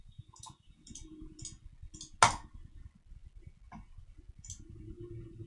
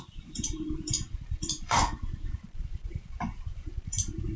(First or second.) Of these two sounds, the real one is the first